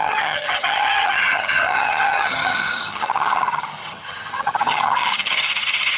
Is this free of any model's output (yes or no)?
no